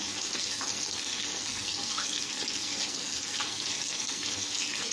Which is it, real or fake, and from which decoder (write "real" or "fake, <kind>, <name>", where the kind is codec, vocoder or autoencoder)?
fake, codec, SNAC